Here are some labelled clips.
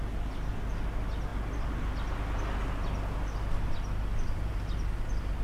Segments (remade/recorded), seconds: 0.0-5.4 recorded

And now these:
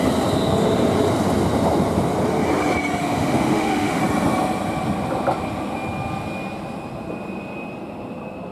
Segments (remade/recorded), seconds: 0.0-3.0 recorded; 3.0-4.0 remade; 4.0-8.5 recorded

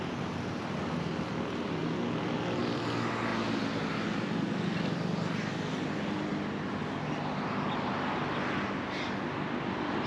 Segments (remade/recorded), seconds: 0.0-10.1 recorded

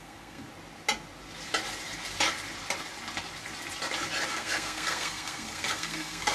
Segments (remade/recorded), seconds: 0.0-0.5 remade; 0.5-4.3 recorded; 4.3-6.3 remade

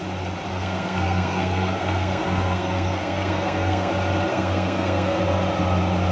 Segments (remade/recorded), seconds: 0.0-0.5 recorded; 0.5-3.9 remade; 3.9-4.3 recorded; 4.3-5.2 remade; 5.2-6.1 recorded

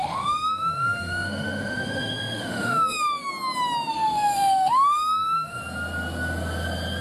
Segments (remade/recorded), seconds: 0.0-3.3 remade; 3.3-3.9 recorded; 3.9-5.6 remade; 5.6-7.0 recorded